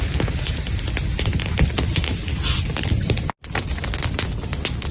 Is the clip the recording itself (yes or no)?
yes